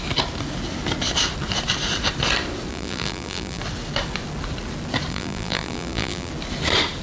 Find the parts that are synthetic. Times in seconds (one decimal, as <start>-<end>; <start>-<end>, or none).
2.7-3.6; 5.1-6.3